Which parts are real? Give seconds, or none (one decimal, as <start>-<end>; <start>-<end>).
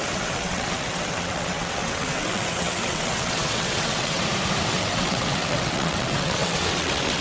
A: 4.2-4.7